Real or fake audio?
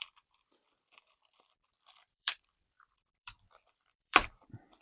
fake